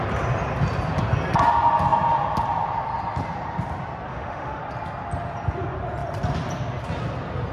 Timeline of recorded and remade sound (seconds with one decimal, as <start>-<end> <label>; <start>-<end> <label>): 0.0-4.1 recorded; 4.1-4.6 remade; 4.6-7.5 recorded